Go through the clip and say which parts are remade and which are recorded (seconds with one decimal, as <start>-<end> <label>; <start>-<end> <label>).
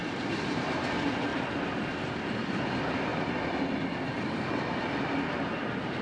0.0-3.1 remade; 3.1-4.2 recorded; 4.2-6.0 remade